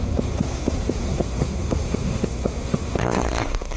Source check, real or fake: fake